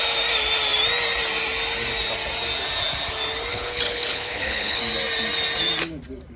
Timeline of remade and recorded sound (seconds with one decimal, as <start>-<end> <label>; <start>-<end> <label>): 0.0-3.5 recorded; 3.5-4.8 remade; 4.8-6.4 recorded